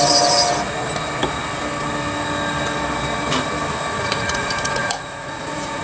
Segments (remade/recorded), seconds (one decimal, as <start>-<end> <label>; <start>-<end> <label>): 0.0-4.0 recorded; 4.0-5.8 remade